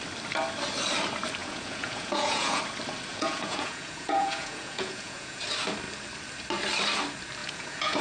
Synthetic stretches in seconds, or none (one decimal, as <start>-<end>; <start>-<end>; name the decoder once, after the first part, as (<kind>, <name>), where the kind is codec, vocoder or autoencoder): 1.4-2.6 (vocoder, Vocos); 3.1-5.4; 7.4-8.0